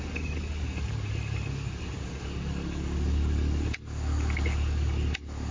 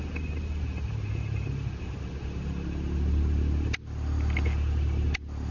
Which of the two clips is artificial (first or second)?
first